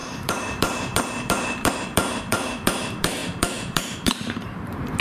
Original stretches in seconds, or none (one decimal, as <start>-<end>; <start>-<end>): none